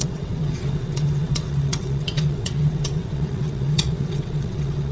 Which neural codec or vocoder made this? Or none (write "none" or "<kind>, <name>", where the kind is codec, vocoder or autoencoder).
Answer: vocoder, WaveNeXt